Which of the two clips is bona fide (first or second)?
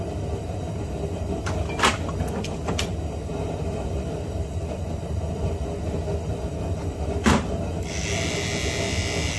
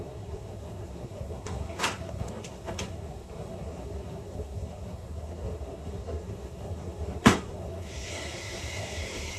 first